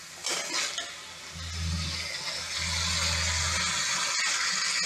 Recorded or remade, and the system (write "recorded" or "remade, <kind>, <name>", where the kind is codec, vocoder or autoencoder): recorded